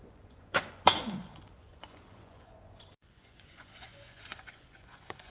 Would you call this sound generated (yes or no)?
yes